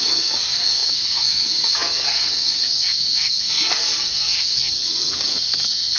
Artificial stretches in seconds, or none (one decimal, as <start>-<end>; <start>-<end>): 0.0-6.0